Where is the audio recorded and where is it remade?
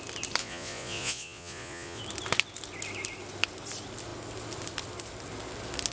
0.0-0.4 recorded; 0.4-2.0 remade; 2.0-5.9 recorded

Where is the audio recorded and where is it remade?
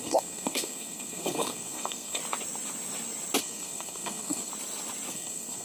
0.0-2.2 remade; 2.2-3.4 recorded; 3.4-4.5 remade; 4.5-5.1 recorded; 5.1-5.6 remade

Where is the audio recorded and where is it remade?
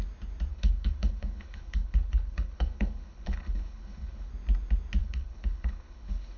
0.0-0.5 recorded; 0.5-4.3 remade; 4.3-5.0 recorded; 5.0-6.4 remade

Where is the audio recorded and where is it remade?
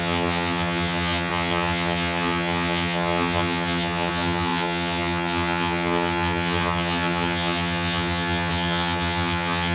0.0-9.7 remade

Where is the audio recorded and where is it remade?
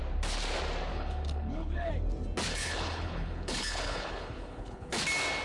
0.0-0.9 recorded; 0.9-1.9 remade; 1.9-2.5 recorded; 2.5-4.9 remade; 4.9-5.4 recorded